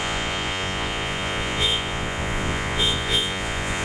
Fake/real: fake